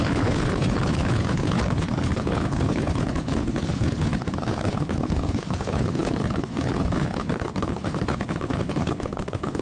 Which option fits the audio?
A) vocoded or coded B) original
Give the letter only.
A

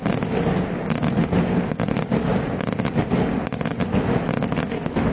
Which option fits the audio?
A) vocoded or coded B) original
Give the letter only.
B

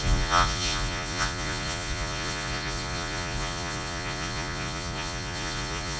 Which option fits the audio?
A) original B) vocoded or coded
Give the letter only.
B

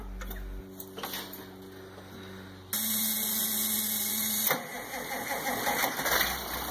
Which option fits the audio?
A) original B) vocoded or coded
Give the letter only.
A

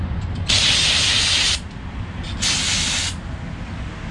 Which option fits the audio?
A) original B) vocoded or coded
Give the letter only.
A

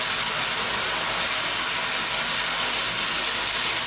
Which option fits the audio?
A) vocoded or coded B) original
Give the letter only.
B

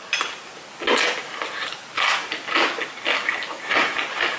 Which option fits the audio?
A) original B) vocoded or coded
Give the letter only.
A